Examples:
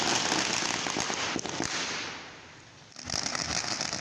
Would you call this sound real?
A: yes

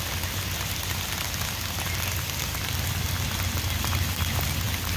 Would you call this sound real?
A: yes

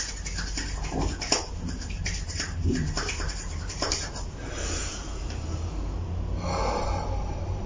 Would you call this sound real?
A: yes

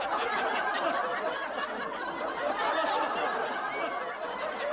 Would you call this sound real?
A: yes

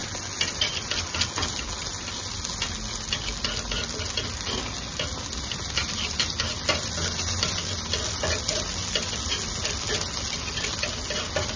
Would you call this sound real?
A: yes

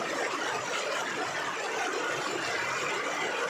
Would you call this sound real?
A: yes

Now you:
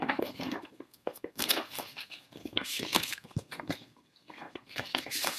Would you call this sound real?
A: no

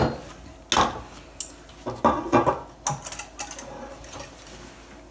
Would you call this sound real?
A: yes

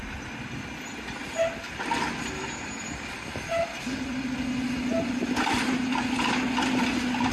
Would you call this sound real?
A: yes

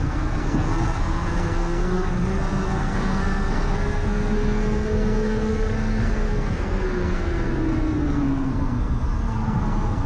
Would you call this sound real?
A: no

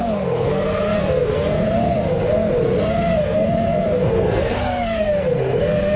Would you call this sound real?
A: no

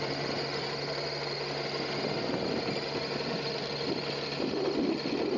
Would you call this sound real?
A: yes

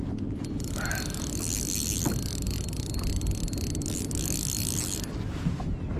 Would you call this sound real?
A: yes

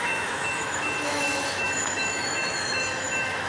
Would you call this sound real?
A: no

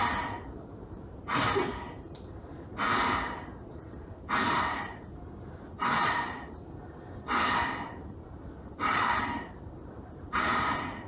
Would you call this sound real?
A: no